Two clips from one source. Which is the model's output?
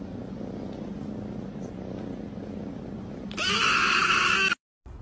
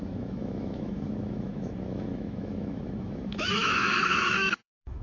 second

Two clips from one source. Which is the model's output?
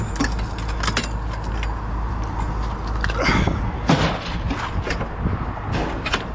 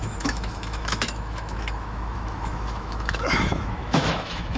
second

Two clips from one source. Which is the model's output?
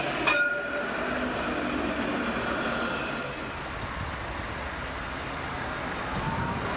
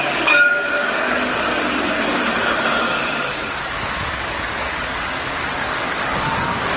second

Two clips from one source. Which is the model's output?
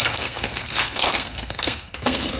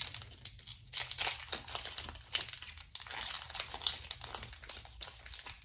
first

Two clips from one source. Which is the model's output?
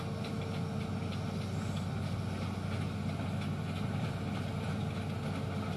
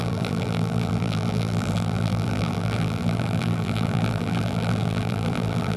second